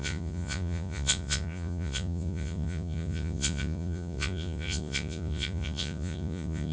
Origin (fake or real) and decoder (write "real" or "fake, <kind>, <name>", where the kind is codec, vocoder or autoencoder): fake, vocoder, Vocos